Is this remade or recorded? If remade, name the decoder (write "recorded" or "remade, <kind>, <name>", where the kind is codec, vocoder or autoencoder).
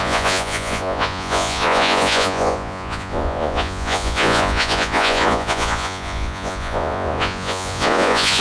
remade, vocoder, Vocos